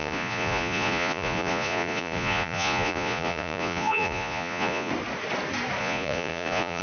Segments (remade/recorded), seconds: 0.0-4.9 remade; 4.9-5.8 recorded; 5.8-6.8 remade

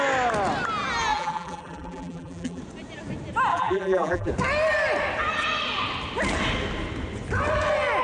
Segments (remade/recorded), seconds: 0.0-1.1 recorded; 1.1-2.6 remade; 2.6-3.5 recorded; 3.5-4.3 remade; 4.3-8.0 recorded

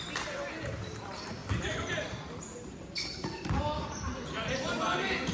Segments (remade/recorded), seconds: 0.0-5.3 recorded

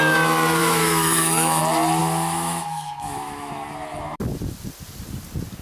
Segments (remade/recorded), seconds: 0.0-0.6 recorded; 0.6-1.6 remade; 1.6-2.0 recorded; 2.0-3.5 remade; 3.5-5.6 recorded

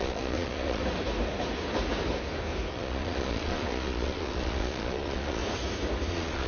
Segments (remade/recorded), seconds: 0.0-0.8 remade; 0.8-2.7 recorded; 2.7-5.4 remade; 5.4-6.1 recorded; 6.1-6.5 remade

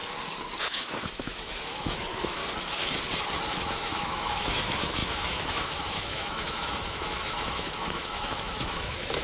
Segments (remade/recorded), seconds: 0.0-0.6 recorded; 0.6-2.4 remade; 2.4-3.5 recorded; 3.5-9.2 remade

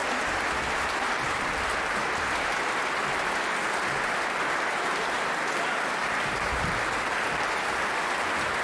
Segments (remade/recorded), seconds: 0.0-3.2 remade; 3.2-6.0 recorded; 6.0-7.9 remade; 7.9-8.6 recorded